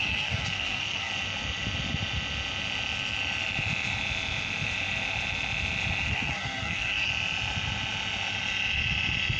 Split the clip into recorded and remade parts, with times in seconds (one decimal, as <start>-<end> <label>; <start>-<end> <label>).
0.0-1.1 remade; 1.1-6.1 recorded; 6.1-7.1 remade; 7.1-9.4 recorded